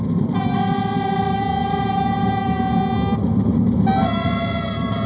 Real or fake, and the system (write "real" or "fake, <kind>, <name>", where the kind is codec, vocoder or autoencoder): real